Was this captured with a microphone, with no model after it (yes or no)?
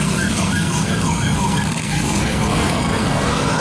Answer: no